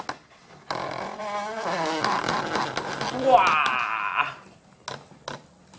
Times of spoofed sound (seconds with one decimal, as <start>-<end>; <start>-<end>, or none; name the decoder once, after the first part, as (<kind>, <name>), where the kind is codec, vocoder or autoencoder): none